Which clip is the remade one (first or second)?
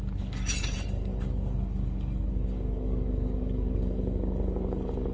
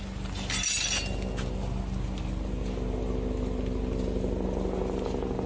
first